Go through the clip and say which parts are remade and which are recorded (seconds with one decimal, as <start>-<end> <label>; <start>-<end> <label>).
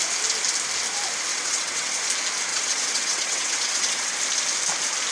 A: 0.0-1.3 recorded; 1.3-1.9 remade; 1.9-2.5 recorded; 2.5-4.1 remade; 4.1-5.1 recorded